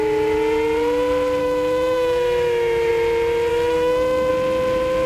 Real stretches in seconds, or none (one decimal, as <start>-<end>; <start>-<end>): 0.0-1.4; 2.9-3.5; 4.3-5.1